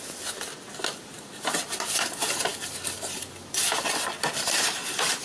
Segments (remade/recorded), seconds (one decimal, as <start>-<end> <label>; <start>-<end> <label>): 0.0-5.2 recorded